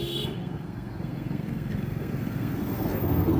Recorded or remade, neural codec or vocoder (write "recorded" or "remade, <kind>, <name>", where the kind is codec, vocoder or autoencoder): remade, codec, SNAC